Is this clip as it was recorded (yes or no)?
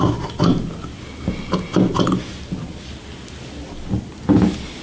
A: yes